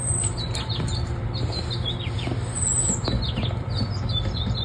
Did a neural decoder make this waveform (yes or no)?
no